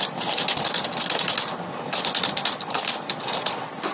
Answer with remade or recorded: recorded